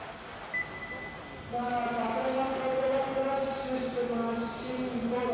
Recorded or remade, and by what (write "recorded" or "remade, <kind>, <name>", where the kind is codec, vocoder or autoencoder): recorded